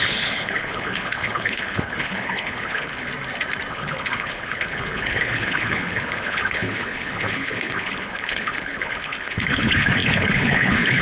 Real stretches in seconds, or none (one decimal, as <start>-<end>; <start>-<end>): 3.1-3.7